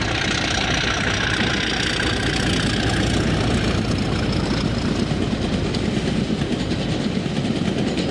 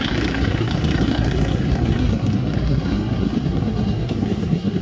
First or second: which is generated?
second